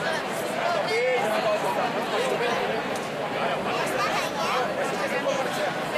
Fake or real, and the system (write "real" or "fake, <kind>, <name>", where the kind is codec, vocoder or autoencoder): real